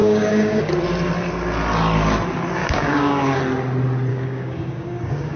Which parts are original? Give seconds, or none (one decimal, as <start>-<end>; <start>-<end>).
0.6-2.6; 3.4-4.1